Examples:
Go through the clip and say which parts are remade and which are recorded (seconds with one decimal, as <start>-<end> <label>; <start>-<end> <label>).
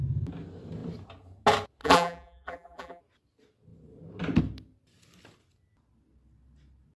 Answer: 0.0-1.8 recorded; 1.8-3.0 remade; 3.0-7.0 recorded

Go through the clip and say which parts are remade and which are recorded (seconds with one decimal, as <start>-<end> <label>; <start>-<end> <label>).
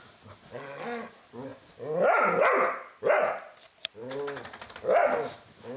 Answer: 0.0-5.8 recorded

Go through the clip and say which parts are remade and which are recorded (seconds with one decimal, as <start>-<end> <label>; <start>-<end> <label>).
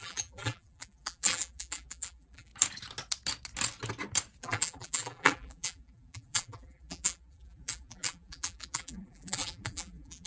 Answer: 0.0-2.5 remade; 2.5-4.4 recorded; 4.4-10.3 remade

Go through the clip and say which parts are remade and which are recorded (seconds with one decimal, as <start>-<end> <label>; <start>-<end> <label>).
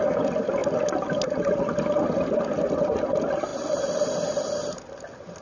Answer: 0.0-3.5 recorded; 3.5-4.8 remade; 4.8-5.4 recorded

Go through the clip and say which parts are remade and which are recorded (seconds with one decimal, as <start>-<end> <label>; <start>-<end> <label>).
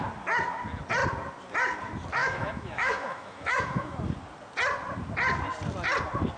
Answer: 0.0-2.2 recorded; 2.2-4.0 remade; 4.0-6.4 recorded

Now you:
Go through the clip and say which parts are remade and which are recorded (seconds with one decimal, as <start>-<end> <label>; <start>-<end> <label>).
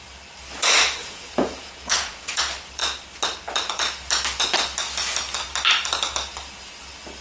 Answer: 0.0-1.0 recorded; 1.0-2.4 remade; 2.4-7.2 recorded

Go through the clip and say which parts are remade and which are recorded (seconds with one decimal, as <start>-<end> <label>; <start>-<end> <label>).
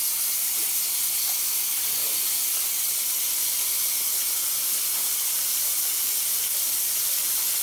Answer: 0.0-7.6 recorded